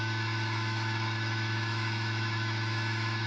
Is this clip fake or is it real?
fake